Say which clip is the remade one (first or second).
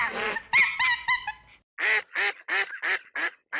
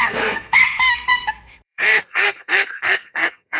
second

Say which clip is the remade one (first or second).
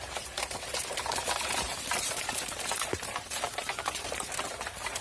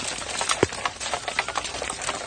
first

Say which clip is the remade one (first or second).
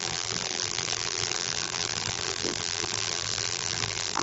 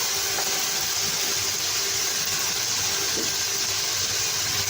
first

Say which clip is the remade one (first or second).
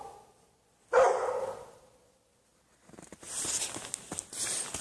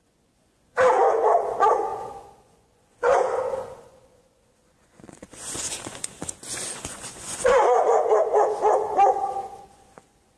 second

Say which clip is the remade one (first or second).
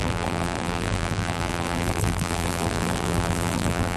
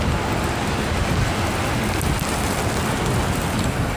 first